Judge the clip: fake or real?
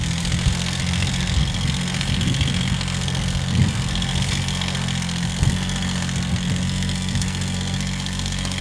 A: fake